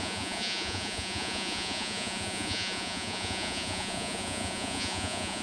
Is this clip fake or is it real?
fake